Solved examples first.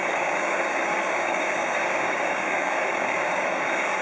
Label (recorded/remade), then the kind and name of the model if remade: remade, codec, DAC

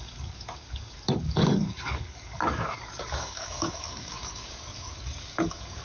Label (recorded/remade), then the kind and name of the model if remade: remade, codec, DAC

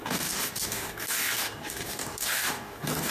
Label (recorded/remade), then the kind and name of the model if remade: remade, codec, DAC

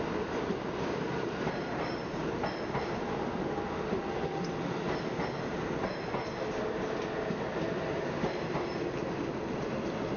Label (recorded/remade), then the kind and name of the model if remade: recorded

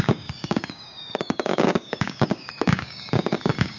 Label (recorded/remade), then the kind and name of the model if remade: remade, codec, DAC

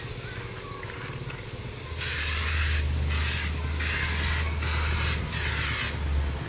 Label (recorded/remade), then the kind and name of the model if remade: recorded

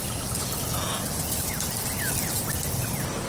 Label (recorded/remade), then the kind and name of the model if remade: recorded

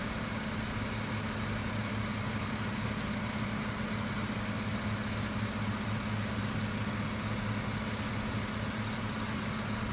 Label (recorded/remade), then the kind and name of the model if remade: recorded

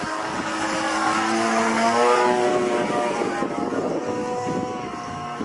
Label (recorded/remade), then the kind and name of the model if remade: remade, codec, DAC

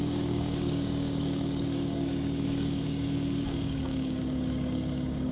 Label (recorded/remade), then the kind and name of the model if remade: remade, codec, DAC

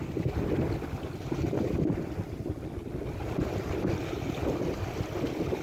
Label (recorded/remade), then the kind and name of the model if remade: recorded